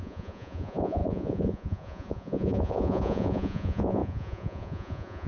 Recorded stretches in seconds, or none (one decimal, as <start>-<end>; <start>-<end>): none